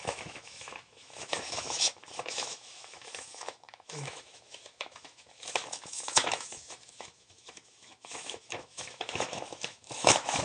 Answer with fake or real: fake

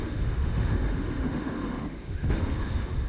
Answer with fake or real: fake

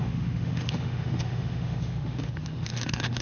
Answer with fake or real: fake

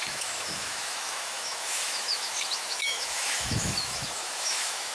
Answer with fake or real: fake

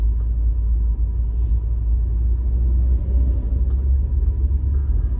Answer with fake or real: real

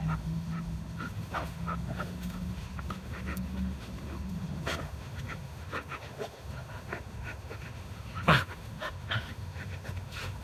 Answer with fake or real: fake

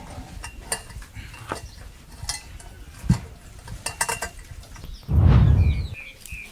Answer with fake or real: real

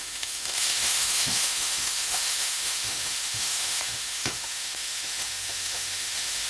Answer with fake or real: fake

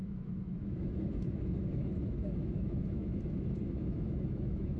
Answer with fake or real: fake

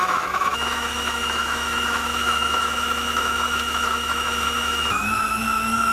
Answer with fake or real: fake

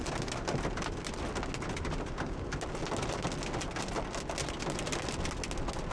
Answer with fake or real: real